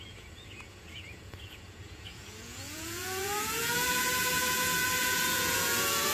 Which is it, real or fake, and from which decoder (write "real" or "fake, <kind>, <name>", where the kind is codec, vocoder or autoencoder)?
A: fake, vocoder, Vocos